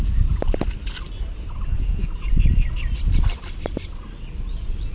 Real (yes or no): yes